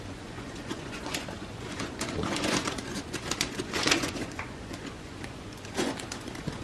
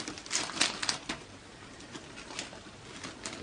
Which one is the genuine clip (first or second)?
second